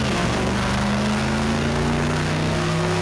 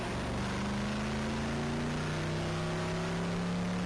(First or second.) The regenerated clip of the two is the first